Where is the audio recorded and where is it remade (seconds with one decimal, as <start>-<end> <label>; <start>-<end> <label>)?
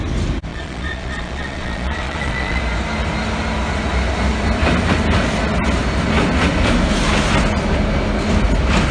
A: 0.0-0.5 recorded; 0.5-2.6 remade; 2.6-8.9 recorded